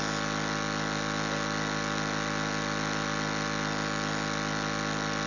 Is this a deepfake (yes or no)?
no